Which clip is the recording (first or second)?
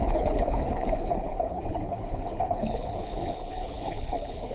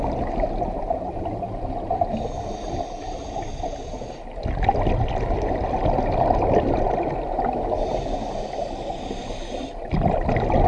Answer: second